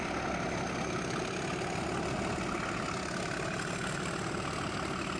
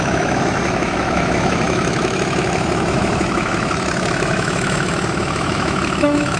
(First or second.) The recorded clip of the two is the first